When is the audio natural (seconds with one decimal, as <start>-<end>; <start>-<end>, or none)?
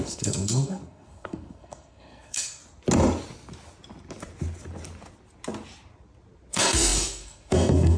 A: 2.6-6.5